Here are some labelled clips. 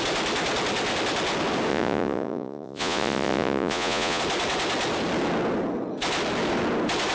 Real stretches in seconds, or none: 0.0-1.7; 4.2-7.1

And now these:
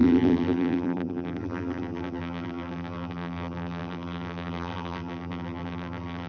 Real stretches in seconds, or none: none

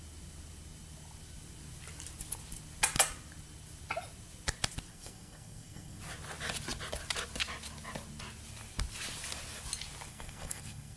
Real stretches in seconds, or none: 0.0-4.9; 6.0-10.1